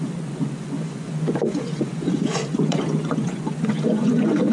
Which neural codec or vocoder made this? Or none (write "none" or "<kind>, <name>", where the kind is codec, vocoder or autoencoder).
vocoder, Vocos